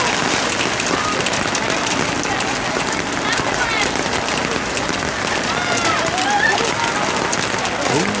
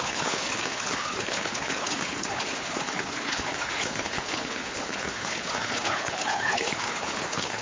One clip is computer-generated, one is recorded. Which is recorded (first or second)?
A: first